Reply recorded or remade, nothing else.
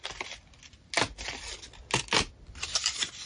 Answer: recorded